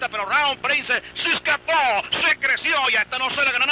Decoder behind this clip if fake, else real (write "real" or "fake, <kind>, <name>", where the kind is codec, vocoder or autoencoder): real